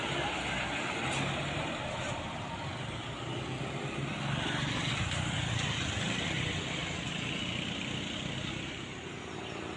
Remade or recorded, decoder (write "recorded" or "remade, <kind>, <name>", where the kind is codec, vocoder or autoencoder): recorded